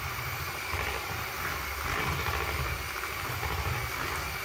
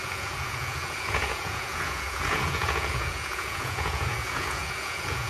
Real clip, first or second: first